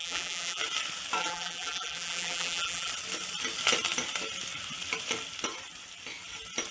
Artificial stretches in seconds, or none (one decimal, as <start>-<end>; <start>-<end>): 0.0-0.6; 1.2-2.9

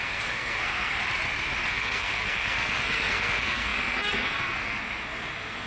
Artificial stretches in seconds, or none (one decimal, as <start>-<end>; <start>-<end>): 0.0-1.0; 1.7-5.7

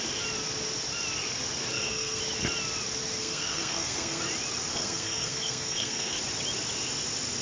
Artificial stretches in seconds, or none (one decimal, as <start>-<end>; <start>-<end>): 1.7-2.2; 3.2-4.2; 4.7-6.2

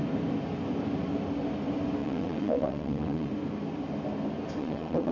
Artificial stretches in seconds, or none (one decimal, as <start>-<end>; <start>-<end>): 2.0-3.3; 4.6-5.1